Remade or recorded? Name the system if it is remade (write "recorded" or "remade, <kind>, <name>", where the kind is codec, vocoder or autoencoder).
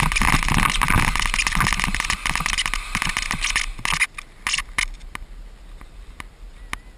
recorded